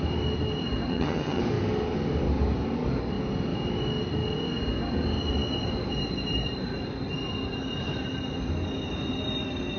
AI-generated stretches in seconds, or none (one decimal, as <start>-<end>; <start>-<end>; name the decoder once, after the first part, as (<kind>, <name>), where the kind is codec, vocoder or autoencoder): 0.9-1.4 (vocoder, HiFi-GAN)